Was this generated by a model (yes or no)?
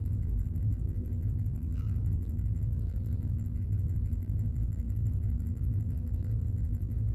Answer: yes